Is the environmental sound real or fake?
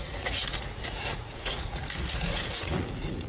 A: fake